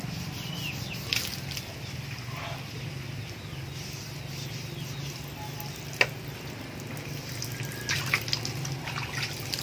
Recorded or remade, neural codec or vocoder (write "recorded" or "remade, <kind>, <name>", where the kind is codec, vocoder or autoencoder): recorded